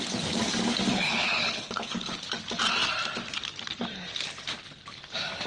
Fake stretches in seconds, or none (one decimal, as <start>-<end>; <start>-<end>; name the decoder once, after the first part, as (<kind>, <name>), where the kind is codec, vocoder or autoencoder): 0.9-2.2 (codec, HILCodec)